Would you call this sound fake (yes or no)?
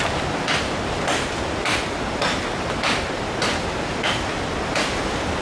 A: no